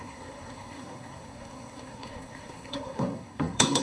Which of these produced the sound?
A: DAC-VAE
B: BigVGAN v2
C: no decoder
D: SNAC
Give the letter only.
D